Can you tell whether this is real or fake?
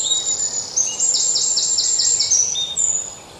real